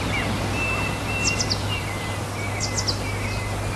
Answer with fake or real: real